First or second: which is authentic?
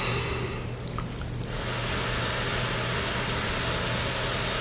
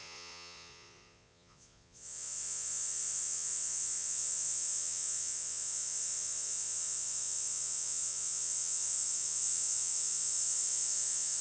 first